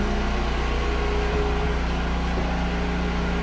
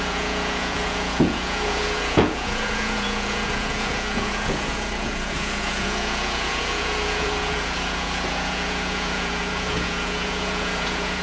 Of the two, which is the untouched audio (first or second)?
first